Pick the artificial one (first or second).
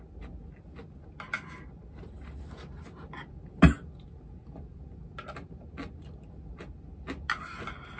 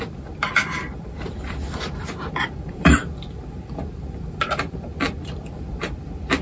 second